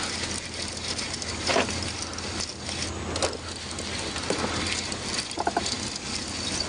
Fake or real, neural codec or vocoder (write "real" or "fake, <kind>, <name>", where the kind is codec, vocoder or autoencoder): real